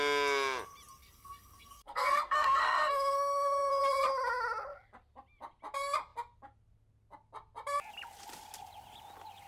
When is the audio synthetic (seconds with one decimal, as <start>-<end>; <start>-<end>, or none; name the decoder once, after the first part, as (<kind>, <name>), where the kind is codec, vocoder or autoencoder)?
1.0-3.8 (codec, SNAC)